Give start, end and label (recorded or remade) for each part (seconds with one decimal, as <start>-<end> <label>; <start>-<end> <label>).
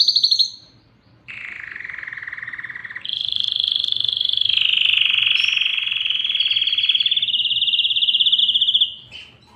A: 0.0-0.4 recorded; 0.4-2.4 remade; 2.4-2.8 recorded; 2.8-4.6 remade; 4.6-5.7 recorded; 5.7-8.4 remade; 8.4-9.6 recorded